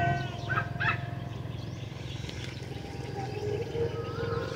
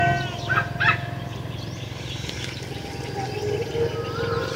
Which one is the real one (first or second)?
second